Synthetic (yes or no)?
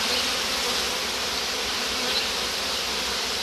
no